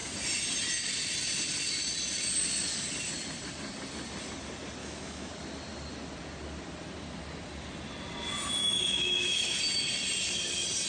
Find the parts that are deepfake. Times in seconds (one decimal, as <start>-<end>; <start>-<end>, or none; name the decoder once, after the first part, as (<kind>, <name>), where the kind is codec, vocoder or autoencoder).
4.8-5.3 (autoencoder, DAC-VAE); 8.6-9.6